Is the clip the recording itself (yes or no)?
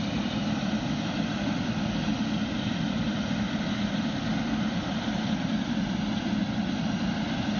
no